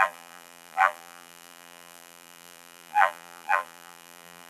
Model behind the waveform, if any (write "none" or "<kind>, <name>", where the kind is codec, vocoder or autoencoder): vocoder, BigVGAN v2